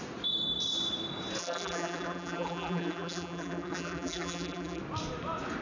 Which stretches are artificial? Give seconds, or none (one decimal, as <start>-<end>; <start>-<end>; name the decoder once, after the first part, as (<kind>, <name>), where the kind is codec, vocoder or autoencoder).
1.4-4.8 (vocoder, BigVGAN v2)